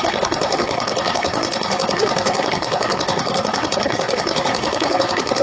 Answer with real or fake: fake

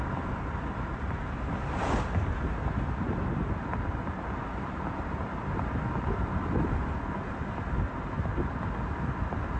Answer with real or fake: real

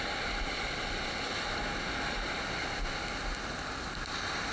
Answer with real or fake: real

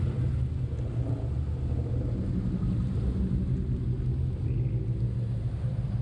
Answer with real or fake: real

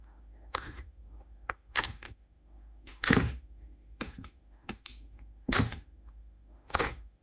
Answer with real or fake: fake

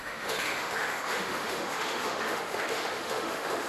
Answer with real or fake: fake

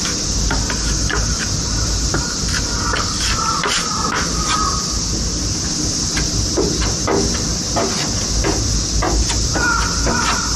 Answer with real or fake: real